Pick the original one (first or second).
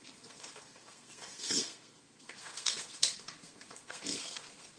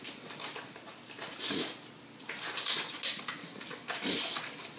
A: second